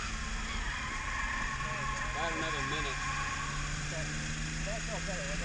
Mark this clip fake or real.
real